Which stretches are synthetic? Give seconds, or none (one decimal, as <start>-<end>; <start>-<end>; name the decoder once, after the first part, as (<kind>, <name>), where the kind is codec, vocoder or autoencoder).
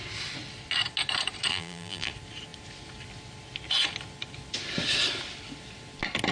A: 1.5-2.1 (vocoder, BigVGAN v2)